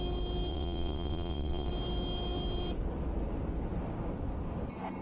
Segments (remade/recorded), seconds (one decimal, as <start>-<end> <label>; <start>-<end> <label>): 0.0-0.5 recorded; 0.5-1.7 remade; 1.7-5.0 recorded